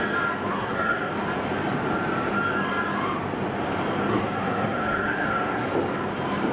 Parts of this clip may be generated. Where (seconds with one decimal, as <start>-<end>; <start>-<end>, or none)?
0.5-1.1; 4.1-5.7